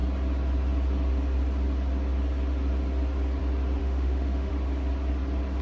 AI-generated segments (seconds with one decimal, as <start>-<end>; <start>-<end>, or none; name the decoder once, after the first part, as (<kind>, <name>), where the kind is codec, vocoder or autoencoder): 3.8-4.5 (autoencoder, DAC-VAE)